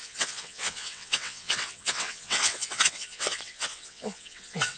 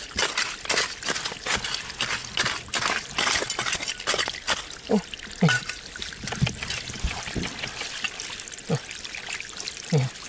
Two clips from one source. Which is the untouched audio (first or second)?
second